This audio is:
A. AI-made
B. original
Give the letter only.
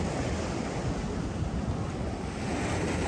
B